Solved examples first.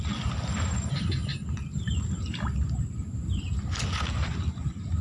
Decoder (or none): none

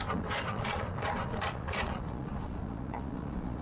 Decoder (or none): vocoder, Vocos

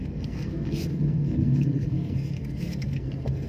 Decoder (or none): codec, SNAC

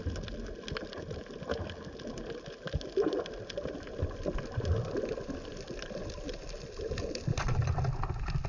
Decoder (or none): none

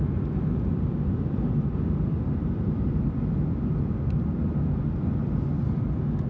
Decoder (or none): none